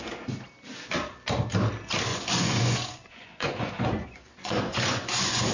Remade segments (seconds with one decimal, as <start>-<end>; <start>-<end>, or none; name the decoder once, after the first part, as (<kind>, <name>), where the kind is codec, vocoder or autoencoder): 2.1-5.5 (vocoder, Vocos)